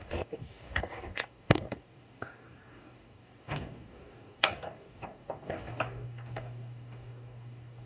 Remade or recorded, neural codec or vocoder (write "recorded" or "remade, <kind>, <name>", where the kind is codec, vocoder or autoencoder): remade, codec, DAC